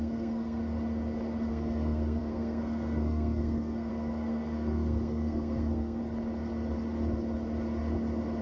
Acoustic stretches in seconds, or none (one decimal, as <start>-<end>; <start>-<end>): 0.6-1.5; 6.0-8.4